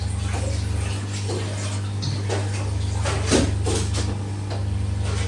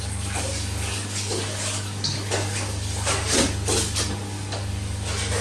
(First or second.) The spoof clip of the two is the second